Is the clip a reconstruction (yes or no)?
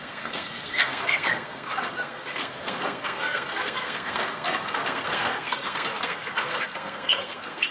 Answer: yes